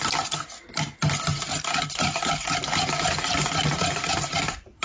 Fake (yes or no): no